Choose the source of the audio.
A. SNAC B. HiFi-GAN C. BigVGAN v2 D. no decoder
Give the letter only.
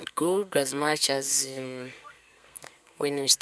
A